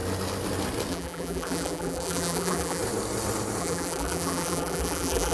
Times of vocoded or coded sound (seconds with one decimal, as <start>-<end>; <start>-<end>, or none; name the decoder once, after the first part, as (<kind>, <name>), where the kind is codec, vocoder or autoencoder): 0.9-2.8 (vocoder, BigVGAN v2); 3.6-5.3